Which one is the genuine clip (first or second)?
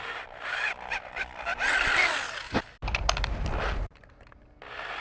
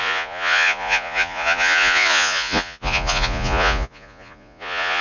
first